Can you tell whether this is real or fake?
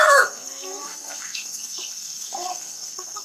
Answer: fake